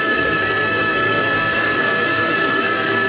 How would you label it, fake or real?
fake